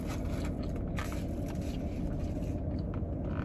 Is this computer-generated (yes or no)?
no